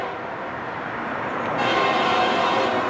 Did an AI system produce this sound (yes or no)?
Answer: no